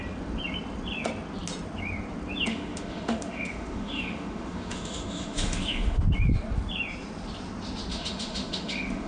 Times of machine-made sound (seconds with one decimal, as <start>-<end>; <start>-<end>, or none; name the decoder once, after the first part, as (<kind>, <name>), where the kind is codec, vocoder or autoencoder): 2.5-6.0 (autoencoder, DAC-VAE); 7.9-9.1